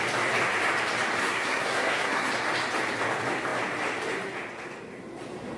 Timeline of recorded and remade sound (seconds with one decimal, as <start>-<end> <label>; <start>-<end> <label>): 0.0-1.2 recorded; 1.2-2.3 remade; 2.3-5.6 recorded

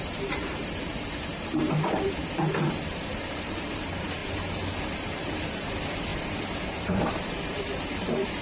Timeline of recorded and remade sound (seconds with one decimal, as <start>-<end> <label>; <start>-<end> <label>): 0.0-4.2 remade; 4.2-4.8 recorded; 4.8-8.4 remade